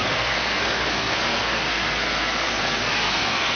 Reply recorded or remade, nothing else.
remade